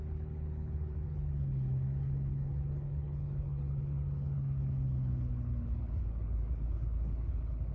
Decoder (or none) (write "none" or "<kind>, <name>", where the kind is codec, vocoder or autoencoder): codec, HILCodec